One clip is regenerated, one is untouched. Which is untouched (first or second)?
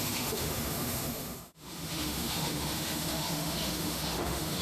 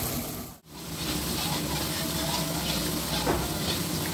second